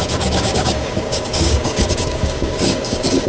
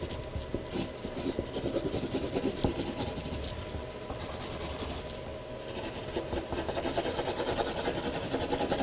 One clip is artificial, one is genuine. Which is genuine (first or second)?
second